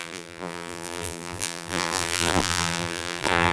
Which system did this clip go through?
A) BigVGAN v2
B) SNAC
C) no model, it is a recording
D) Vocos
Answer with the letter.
A